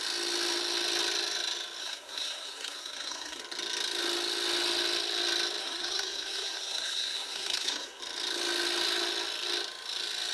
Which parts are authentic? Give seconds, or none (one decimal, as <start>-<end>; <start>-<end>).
0.0-1.8; 3.4-5.6; 8.0-10.3

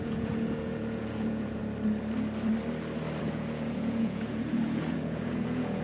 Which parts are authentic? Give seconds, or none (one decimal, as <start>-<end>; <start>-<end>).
1.6-3.2

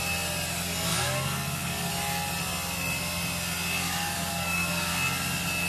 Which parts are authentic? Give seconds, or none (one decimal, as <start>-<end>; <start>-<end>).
0.0-0.9; 1.9-3.8; 4.9-5.7

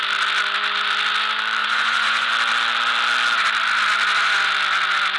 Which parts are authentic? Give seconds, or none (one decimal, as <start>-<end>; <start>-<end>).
0.0-1.6; 2.3-5.2

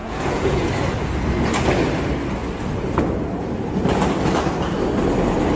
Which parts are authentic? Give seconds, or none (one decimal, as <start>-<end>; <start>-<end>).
0.7-5.6